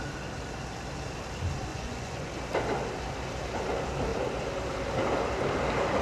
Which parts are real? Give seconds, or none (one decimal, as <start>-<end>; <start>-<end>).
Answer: 0.0-1.7; 2.3-6.0